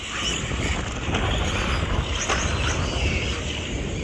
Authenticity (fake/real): real